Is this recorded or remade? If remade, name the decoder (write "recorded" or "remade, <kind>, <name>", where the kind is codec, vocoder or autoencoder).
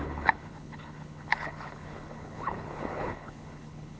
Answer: remade, codec, HILCodec